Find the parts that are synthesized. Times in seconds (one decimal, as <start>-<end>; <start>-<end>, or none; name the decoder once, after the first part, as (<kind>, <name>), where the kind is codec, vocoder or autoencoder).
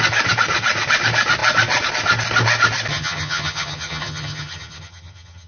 2.9-5.5 (vocoder, HiFi-GAN)